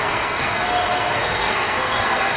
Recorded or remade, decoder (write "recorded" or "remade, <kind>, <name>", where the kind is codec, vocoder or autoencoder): remade, codec, SNAC